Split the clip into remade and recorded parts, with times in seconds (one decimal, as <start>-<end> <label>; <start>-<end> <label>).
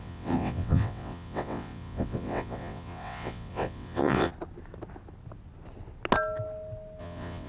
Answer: 0.0-4.3 remade; 4.3-7.0 recorded; 7.0-7.5 remade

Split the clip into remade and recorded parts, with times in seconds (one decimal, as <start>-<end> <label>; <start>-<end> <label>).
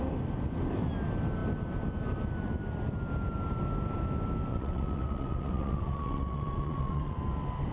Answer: 0.0-4.5 recorded; 4.5-7.2 remade; 7.2-7.7 recorded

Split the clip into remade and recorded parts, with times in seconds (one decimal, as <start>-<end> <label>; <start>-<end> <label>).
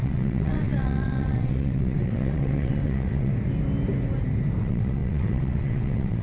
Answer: 0.0-3.3 remade; 3.3-4.6 recorded; 4.6-6.2 remade